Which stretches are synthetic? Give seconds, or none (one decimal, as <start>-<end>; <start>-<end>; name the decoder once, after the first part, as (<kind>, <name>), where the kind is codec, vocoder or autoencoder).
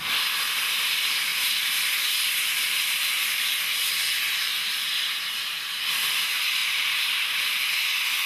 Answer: 1.3-4.7 (vocoder, BigVGAN v2); 6.6-7.6